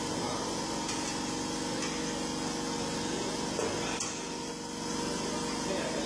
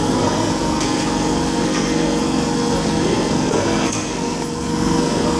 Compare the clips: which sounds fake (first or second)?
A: second